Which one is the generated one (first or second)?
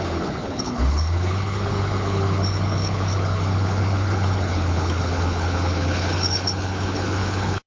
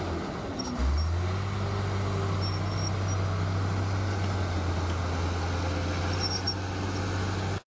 first